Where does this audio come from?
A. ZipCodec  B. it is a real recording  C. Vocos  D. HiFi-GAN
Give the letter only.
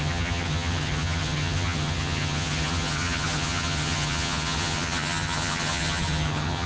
D